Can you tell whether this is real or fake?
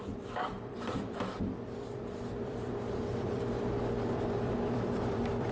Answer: fake